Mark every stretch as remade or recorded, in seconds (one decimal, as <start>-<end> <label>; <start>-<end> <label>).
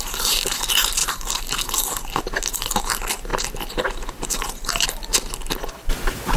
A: 0.0-3.3 remade; 3.3-4.4 recorded; 4.4-5.1 remade; 5.1-5.7 recorded; 5.7-6.4 remade